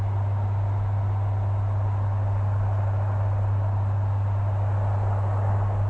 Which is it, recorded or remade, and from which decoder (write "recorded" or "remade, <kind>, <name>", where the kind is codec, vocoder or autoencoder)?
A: recorded